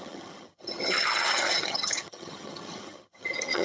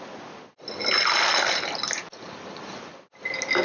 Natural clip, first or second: second